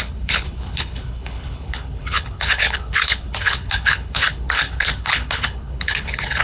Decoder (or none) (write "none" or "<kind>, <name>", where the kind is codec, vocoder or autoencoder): codec, HILCodec